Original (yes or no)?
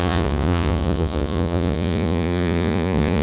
no